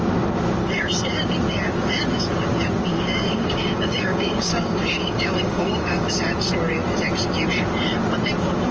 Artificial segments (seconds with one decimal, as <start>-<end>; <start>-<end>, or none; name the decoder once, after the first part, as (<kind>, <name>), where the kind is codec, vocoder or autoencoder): 2.9-6.1 (codec, DAC)